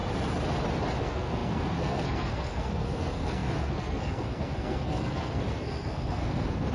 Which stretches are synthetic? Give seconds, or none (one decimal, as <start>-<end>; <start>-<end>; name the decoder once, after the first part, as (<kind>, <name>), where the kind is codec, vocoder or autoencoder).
1.0-6.7 (codec, SNAC)